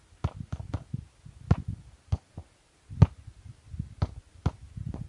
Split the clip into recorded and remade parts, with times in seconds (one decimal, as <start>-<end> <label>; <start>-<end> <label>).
0.0-5.1 recorded